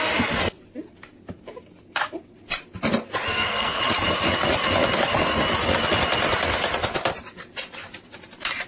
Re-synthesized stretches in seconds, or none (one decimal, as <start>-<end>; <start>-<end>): 3.3-3.8